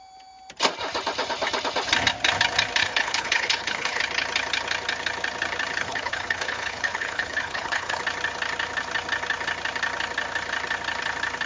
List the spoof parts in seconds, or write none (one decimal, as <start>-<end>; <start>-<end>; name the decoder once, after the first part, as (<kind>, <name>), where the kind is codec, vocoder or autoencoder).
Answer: 2.8-4.0 (codec, HILCodec); 5.8-8.0

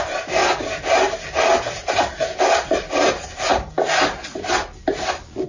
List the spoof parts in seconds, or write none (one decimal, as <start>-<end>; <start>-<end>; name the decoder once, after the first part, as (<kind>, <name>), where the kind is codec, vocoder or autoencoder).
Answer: none

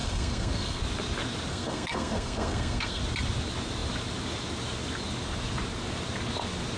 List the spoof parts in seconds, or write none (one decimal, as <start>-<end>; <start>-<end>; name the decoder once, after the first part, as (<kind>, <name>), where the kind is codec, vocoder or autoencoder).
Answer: 0.0-0.8 (codec, SNAC); 1.5-3.0